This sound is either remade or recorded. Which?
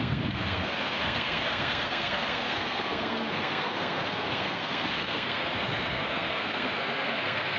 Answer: remade